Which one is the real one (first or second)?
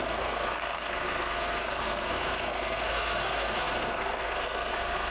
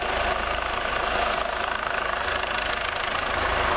second